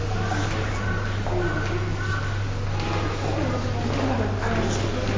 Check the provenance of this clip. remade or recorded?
recorded